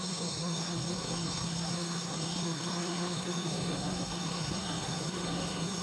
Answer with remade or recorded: remade